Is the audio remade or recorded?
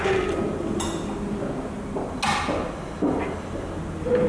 recorded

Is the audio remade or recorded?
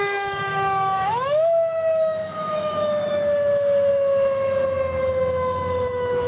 remade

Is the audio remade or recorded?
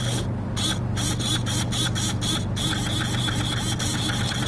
recorded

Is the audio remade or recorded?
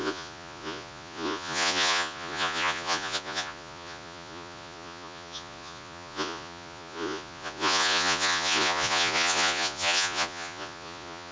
remade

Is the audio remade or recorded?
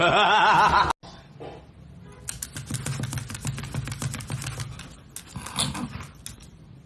recorded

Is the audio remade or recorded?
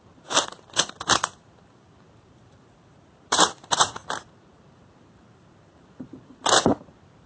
remade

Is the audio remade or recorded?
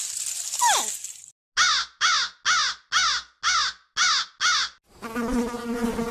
recorded